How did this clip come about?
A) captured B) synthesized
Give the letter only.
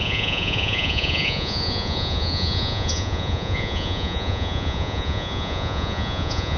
B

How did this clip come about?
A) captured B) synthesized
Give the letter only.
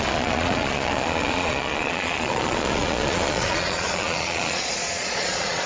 B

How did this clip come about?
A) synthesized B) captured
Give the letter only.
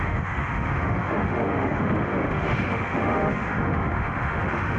A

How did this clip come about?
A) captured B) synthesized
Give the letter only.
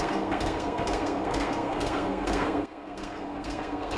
B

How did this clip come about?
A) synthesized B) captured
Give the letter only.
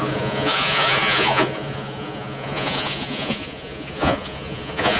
A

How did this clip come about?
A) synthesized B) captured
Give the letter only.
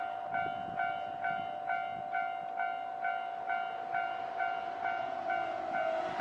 B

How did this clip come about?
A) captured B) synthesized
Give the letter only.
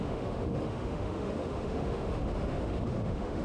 B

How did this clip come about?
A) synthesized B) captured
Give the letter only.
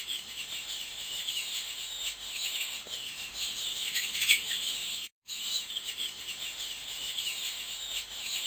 A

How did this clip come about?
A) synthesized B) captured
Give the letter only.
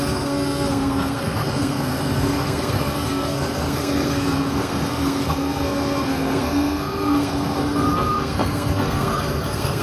A